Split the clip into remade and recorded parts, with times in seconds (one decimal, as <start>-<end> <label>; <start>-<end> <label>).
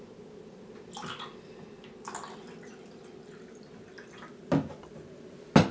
0.0-5.7 recorded